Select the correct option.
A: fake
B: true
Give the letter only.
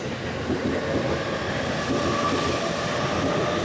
B